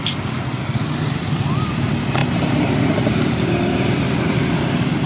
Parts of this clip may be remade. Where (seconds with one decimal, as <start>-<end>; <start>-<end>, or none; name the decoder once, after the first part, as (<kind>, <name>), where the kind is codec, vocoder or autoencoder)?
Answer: none